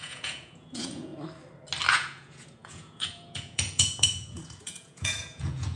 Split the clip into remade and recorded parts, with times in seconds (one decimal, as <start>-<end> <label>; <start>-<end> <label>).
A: 0.0-1.1 remade; 1.1-1.9 recorded; 1.9-5.8 remade